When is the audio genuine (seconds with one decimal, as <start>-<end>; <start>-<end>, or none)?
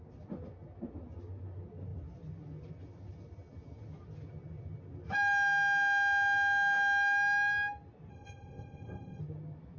0.0-8.1; 9.2-9.8